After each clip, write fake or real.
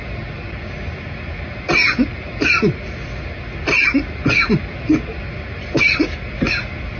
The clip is real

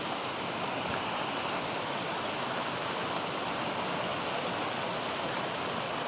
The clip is real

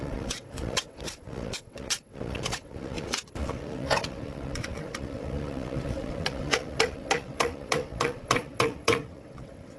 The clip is fake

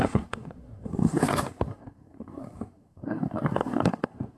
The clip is fake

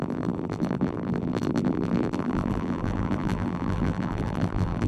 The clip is fake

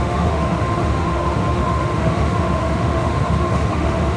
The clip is fake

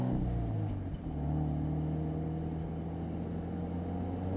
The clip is real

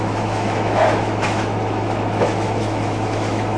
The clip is fake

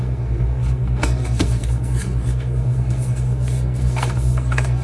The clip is fake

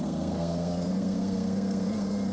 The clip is fake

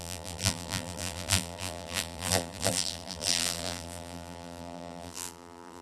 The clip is fake